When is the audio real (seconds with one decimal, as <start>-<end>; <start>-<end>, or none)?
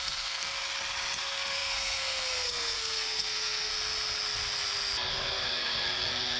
0.6-1.2; 3.7-5.1